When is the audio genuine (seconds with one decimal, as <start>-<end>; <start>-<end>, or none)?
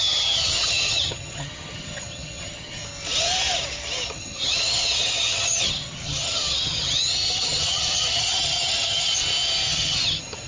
2.8-4.1; 9.2-9.7